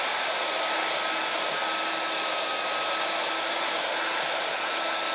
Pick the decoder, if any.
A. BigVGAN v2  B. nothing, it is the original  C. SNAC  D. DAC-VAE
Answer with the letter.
B